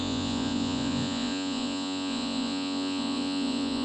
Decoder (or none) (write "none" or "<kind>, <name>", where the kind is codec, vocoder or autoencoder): vocoder, Vocos